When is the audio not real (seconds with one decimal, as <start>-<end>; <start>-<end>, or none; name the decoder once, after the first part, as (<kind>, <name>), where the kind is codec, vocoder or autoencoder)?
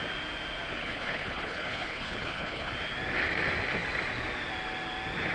0.8-2.7 (codec, HILCodec)